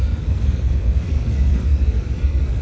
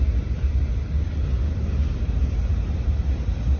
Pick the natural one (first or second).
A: second